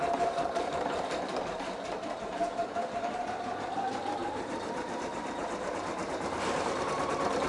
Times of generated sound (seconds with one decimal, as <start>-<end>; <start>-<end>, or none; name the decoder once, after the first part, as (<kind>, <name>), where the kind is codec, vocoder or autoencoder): 0.0-1.3 (vocoder, BigVGAN v2); 2.2-7.5